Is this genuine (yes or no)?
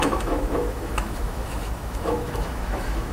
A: no